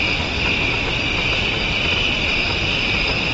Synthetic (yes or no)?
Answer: no